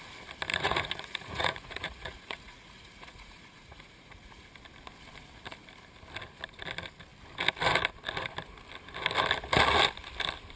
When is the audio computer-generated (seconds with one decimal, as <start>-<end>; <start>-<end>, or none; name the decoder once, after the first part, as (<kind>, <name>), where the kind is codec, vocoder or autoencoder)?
0.5-4.5 (vocoder, Vocos)